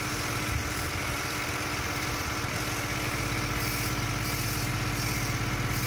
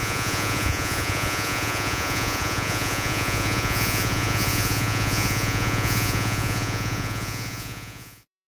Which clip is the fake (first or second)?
second